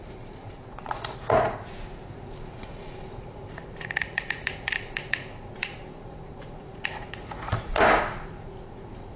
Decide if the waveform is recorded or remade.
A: remade